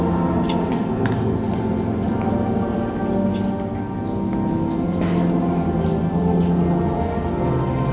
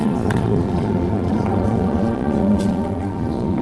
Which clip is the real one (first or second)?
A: first